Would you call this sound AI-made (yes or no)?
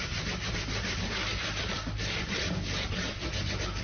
no